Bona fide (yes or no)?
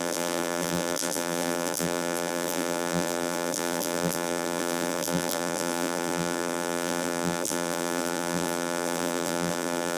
no